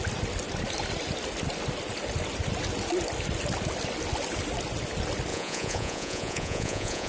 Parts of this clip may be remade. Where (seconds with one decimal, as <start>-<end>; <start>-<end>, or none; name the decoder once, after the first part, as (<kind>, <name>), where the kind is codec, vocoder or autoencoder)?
5.3-7.1 (vocoder, Vocos)